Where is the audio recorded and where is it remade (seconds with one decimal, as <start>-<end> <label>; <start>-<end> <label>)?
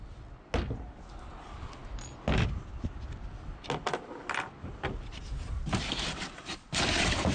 0.0-7.3 recorded